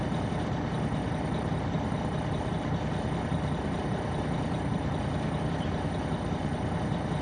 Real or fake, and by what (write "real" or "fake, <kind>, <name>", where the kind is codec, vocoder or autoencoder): fake, vocoder, BigVGAN v2